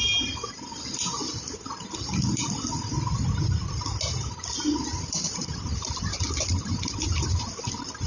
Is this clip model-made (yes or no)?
no